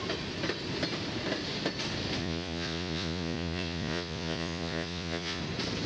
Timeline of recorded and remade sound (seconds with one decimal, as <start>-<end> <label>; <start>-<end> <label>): 0.0-2.2 recorded; 2.2-5.4 remade; 5.4-5.9 recorded